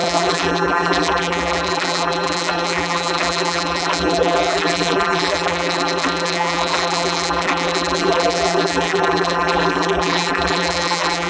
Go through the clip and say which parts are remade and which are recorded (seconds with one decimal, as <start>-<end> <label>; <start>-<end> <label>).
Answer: 0.0-11.3 remade